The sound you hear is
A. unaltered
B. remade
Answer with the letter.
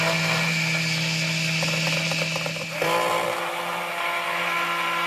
A